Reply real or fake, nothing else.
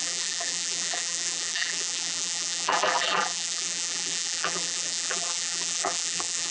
fake